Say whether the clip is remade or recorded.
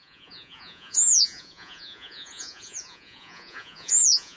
remade